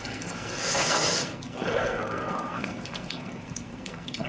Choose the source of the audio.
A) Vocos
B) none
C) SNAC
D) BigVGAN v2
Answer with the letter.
C